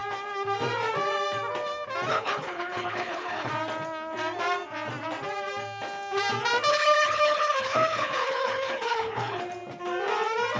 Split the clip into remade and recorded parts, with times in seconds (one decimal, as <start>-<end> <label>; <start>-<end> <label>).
0.0-2.1 recorded; 2.1-3.5 remade; 3.5-6.7 recorded; 6.7-9.4 remade; 9.4-10.6 recorded